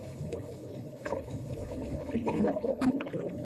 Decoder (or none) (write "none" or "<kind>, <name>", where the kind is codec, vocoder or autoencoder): codec, HILCodec